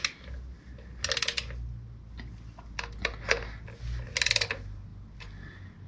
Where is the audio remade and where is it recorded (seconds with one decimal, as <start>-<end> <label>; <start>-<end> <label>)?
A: 0.0-5.9 recorded